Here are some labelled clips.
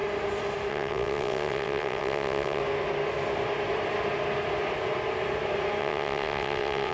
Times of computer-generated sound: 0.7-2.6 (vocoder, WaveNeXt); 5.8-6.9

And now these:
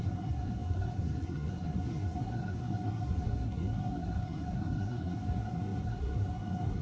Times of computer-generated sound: 0.0-6.8 (codec, SNAC)